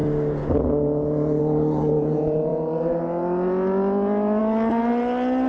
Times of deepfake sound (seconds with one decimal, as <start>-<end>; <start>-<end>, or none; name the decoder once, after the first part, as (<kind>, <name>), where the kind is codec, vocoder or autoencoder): none